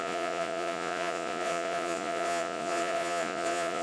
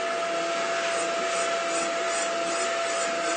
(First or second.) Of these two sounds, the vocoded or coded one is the first